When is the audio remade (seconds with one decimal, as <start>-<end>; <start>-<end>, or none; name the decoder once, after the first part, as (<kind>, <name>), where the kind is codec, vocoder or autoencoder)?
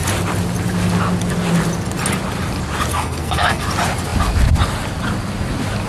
2.9-3.6 (codec, SNAC)